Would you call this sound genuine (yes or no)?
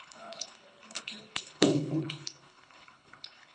no